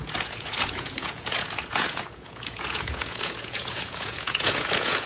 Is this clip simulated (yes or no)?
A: yes